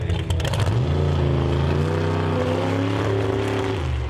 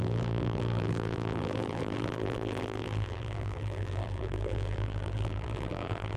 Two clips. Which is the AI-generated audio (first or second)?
second